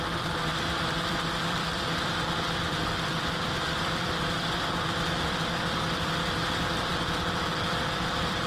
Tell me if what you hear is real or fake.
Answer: fake